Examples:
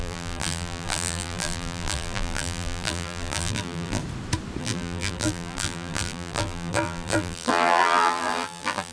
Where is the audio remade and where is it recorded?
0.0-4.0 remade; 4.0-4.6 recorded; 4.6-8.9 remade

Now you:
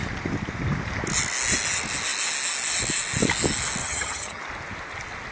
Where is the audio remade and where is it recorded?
0.0-3.8 recorded; 3.8-4.4 remade; 4.4-5.3 recorded

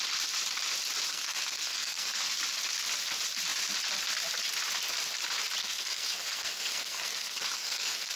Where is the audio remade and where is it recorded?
0.0-1.1 recorded; 1.1-2.4 remade; 2.4-5.6 recorded; 5.6-8.2 remade

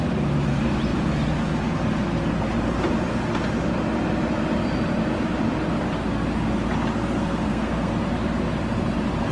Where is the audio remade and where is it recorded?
0.0-7.2 recorded; 7.2-7.9 remade; 7.9-9.3 recorded

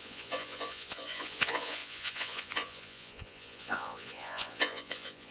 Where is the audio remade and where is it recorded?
0.0-5.3 remade

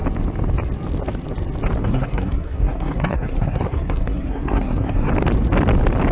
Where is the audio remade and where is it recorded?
0.0-1.8 recorded; 1.8-5.1 remade; 5.1-6.1 recorded

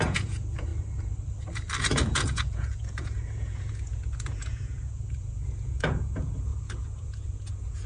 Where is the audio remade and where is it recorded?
0.0-0.7 remade; 0.7-1.8 recorded; 1.8-7.9 remade